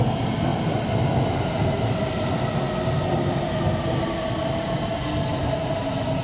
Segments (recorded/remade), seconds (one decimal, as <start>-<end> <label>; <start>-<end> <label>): 0.0-6.2 recorded

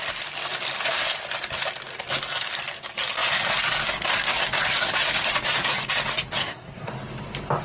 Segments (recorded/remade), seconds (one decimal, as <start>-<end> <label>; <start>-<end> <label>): 0.0-6.4 recorded; 6.4-6.9 remade; 6.9-7.6 recorded

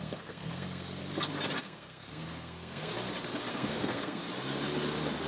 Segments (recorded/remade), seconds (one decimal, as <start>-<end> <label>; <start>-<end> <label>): 0.0-1.0 remade; 1.0-1.6 recorded; 1.6-2.9 remade; 2.9-3.5 recorded; 3.5-4.2 remade; 4.2-5.3 recorded

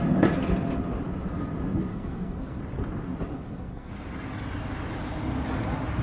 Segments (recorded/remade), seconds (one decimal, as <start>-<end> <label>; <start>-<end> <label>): 0.0-1.9 recorded; 1.9-2.6 remade; 2.6-3.3 recorded; 3.3-3.9 remade; 3.9-6.0 recorded

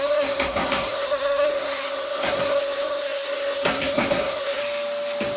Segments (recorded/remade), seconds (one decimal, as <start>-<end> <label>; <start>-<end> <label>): 0.0-4.6 remade; 4.6-5.4 recorded